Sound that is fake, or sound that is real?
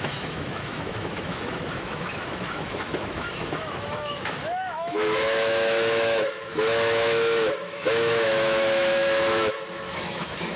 fake